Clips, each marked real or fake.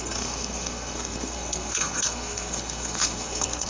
fake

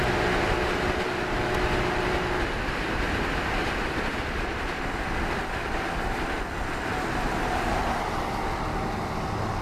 real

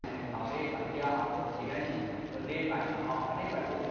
real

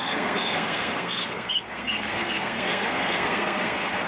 fake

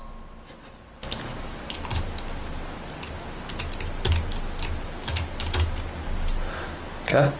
real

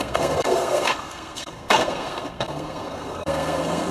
fake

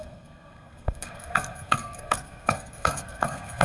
fake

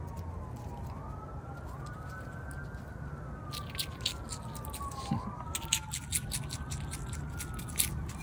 real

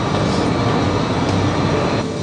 real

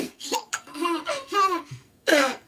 fake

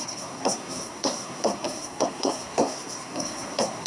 fake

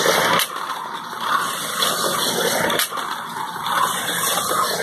real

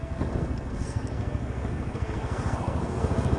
fake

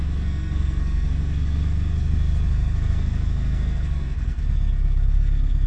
fake